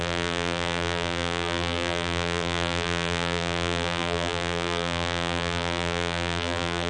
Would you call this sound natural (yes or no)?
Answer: no